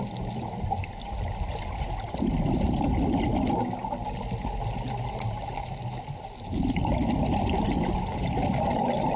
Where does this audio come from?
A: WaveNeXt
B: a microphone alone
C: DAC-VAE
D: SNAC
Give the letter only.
B